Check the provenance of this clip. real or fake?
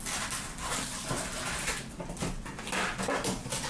real